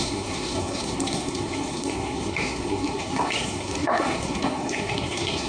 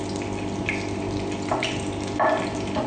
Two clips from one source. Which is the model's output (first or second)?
first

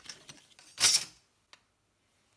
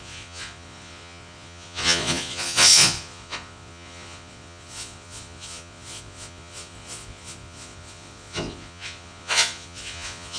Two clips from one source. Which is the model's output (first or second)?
second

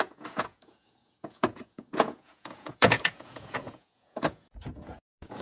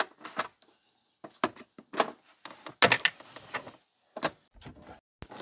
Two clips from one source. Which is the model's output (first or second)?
first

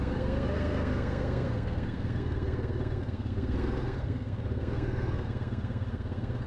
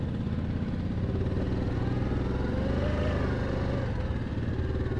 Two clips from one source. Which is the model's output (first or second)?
first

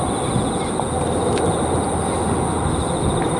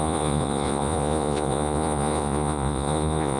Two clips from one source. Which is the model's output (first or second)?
second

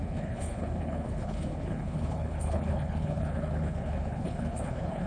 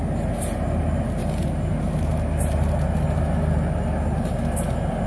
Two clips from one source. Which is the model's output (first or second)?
first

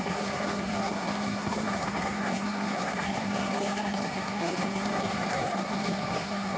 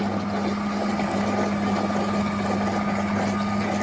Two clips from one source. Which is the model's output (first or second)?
first